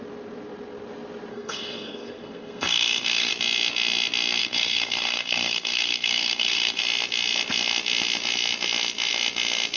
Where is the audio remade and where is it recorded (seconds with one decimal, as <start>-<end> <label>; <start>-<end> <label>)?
0.0-1.3 recorded; 1.3-3.3 remade; 3.3-4.4 recorded; 4.4-6.8 remade; 6.8-9.8 recorded